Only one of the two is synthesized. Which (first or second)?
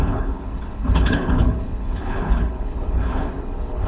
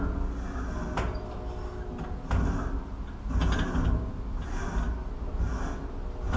first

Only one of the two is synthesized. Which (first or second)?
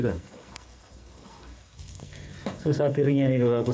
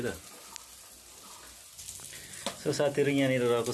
first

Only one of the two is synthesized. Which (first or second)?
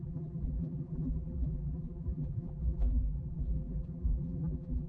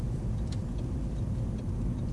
first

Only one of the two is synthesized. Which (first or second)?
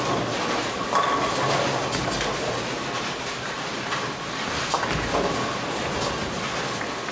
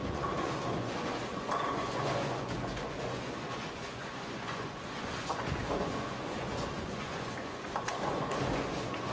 second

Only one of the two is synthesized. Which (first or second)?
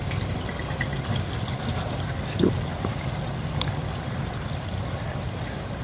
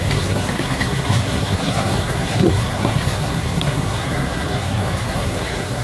second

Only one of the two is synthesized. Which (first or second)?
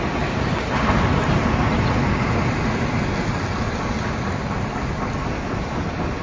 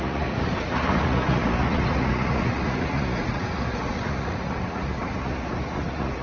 second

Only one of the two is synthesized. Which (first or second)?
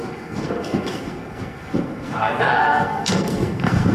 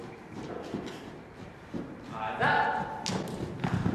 first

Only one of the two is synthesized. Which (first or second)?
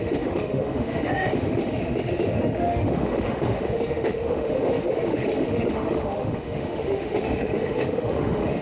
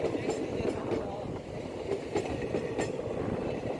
first